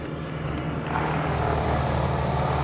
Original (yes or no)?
yes